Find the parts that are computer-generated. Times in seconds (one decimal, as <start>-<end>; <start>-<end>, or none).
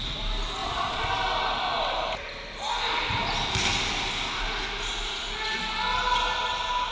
0.6-1.1